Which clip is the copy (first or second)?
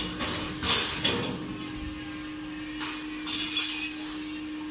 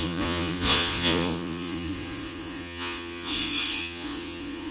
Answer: second